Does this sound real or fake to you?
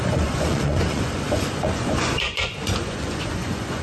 fake